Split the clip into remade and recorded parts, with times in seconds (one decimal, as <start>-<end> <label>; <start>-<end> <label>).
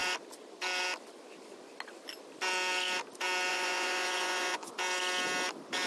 0.0-3.5 recorded; 3.5-4.7 remade; 4.7-5.9 recorded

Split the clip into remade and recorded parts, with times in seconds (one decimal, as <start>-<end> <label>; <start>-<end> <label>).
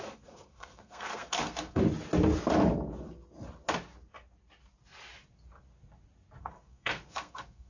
0.0-1.8 remade; 1.8-6.4 recorded; 6.4-7.7 remade